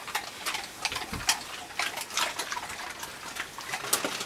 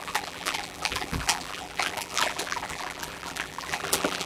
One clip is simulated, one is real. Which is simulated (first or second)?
second